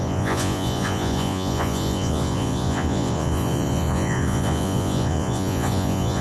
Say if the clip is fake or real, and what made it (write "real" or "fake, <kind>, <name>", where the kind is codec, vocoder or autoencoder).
fake, vocoder, Vocos